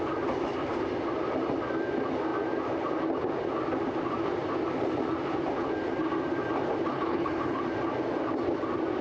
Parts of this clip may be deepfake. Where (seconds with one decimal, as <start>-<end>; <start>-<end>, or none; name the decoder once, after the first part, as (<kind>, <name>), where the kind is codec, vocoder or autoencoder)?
6.9-7.6 (codec, HILCodec)